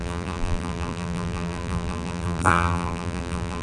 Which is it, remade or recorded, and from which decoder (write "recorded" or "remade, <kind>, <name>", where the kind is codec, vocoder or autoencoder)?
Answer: remade, vocoder, BigVGAN v2